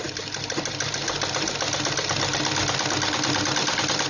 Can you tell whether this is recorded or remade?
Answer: recorded